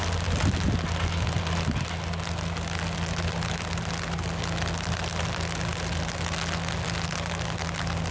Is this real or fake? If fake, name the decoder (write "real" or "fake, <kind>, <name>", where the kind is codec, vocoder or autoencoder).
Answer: real